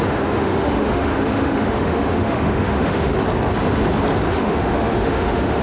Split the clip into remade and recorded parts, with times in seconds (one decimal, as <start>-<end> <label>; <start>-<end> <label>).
0.0-3.1 remade; 3.1-4.3 recorded; 4.3-5.6 remade